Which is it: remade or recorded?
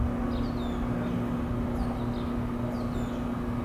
recorded